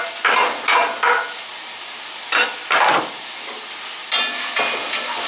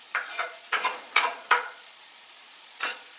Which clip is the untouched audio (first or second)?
first